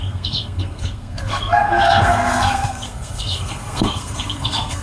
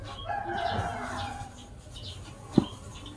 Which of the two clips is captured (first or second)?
second